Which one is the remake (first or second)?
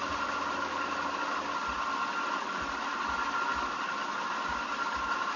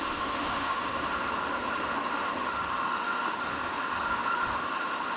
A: second